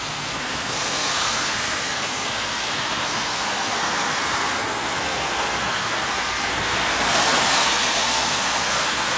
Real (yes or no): no